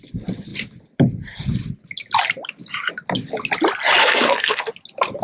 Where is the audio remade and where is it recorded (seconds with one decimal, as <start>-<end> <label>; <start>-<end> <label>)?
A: 0.0-4.0 recorded; 4.0-4.7 remade; 4.7-5.2 recorded